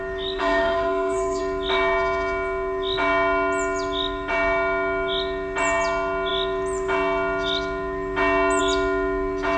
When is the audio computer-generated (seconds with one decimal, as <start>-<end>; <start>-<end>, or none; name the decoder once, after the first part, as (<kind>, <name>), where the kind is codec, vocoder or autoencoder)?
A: 0.4-1.4 (codec, SNAC)